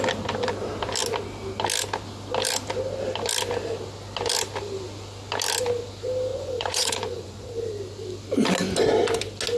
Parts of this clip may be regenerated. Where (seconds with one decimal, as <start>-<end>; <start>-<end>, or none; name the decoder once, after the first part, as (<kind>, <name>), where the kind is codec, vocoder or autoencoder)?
6.3-7.5 (vocoder, Vocos)